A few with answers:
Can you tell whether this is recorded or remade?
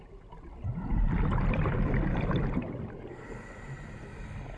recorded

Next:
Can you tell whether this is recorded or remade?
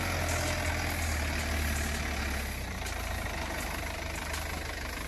recorded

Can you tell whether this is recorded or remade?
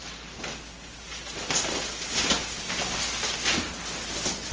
recorded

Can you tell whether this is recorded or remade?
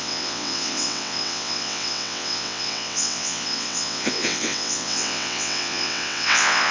remade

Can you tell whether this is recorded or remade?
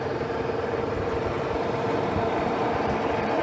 remade